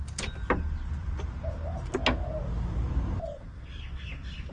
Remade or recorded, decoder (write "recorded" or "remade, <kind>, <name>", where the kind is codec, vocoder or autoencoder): recorded